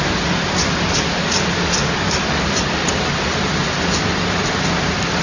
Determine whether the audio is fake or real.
real